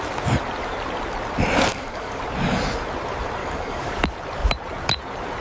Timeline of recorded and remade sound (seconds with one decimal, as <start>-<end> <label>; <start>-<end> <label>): 0.0-1.7 recorded; 1.7-2.2 remade; 2.2-3.4 recorded; 3.4-3.9 remade; 3.9-5.4 recorded